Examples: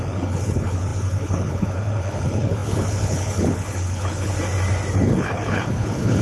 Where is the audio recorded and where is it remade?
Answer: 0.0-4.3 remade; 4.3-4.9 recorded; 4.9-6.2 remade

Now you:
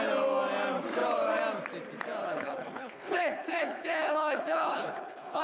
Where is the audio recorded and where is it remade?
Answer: 0.0-2.2 recorded; 2.2-5.4 remade

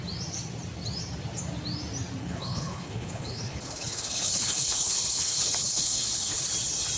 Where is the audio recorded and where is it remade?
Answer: 0.0-2.2 recorded; 2.2-6.4 remade; 6.4-7.0 recorded

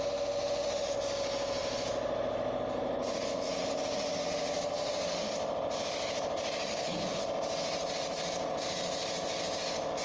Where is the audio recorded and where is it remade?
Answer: 0.0-6.7 recorded; 6.7-7.2 remade; 7.2-10.0 recorded

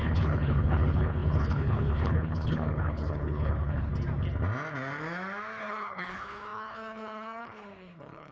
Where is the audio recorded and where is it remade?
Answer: 0.0-3.9 remade; 3.9-5.6 recorded; 5.6-8.3 remade

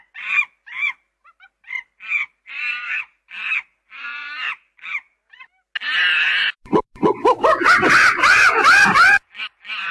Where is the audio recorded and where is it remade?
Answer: 0.0-9.9 recorded

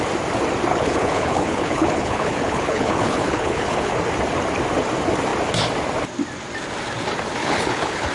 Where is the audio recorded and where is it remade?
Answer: 0.0-0.7 recorded; 0.7-3.9 remade; 3.9-7.4 recorded; 7.4-8.1 remade